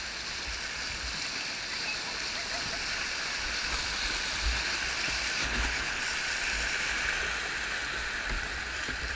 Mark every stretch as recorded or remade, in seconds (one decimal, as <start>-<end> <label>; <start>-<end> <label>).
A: 0.0-5.4 recorded; 5.4-6.0 remade; 6.0-9.2 recorded